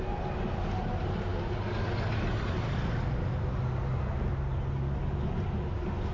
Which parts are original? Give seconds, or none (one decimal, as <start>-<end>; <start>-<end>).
0.0-6.1